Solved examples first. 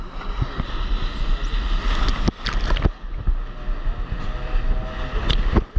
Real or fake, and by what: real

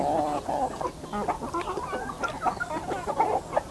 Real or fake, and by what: real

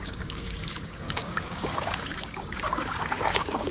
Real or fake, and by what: fake, codec, DAC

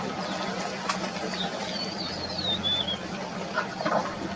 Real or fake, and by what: real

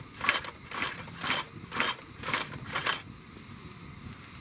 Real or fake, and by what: real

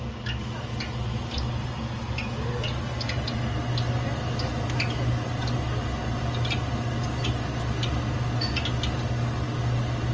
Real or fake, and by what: real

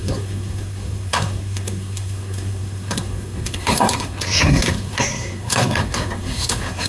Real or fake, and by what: fake, codec, SNAC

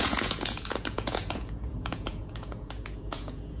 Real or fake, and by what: fake, vocoder, Vocos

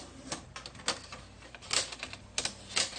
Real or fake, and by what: real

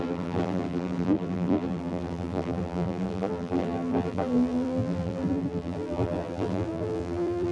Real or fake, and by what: fake, vocoder, BigVGAN v2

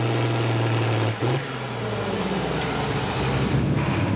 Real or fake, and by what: real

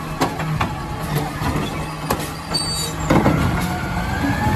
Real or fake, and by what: real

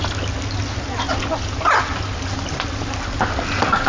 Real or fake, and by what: real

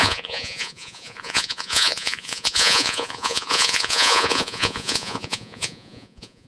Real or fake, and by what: fake, vocoder, Vocos